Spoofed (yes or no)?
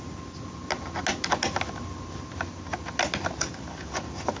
no